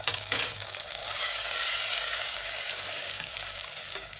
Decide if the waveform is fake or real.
fake